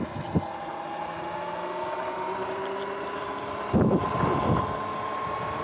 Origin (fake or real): real